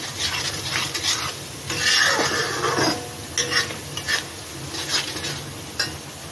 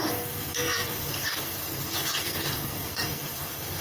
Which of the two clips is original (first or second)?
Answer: first